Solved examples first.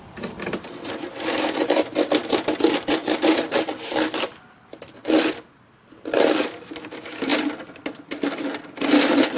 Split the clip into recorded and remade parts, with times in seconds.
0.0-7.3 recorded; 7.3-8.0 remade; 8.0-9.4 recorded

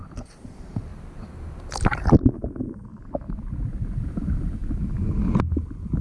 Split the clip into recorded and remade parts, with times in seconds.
0.0-0.9 remade; 0.9-2.3 recorded; 2.3-2.9 remade; 2.9-3.4 recorded; 3.4-4.6 remade; 4.6-5.6 recorded; 5.6-6.0 remade

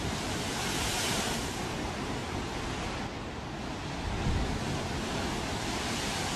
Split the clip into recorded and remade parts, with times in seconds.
0.0-2.2 remade; 2.2-6.0 recorded; 6.0-6.4 remade